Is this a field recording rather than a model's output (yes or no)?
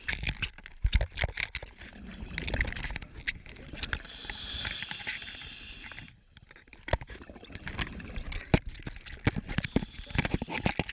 yes